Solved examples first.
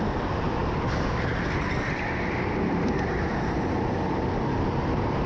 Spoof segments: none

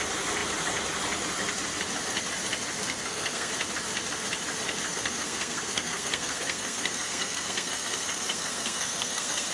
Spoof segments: 2.8-3.5 (codec, SNAC); 4.9-9.5

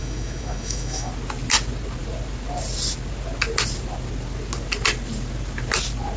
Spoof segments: 0.0-1.1 (autoencoder, DAC-VAE)